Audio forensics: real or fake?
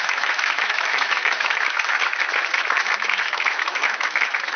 fake